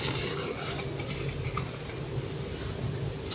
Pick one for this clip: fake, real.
real